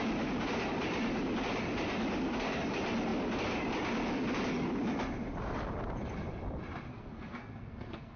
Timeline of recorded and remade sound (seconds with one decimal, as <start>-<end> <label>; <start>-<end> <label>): 0.0-6.9 recorded; 6.9-8.2 remade